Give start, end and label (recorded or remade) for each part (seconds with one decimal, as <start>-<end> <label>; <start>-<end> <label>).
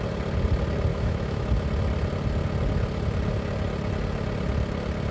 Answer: 0.0-0.9 recorded; 0.9-1.4 remade; 1.4-5.1 recorded